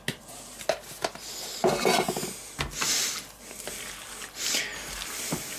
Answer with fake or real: real